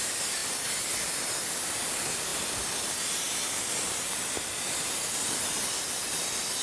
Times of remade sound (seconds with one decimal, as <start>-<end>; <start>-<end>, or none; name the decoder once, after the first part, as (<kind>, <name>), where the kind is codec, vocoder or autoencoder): none